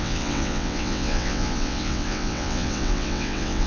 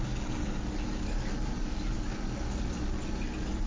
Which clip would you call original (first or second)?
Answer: second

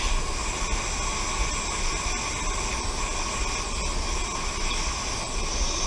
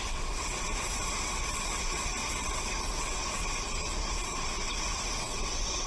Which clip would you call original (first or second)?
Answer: first